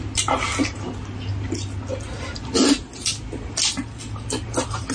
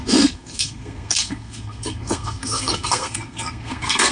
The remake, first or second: second